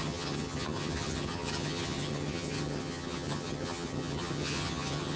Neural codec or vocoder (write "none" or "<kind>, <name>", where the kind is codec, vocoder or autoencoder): vocoder, HiFi-GAN